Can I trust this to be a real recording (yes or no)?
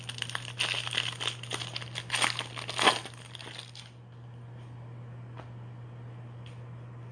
yes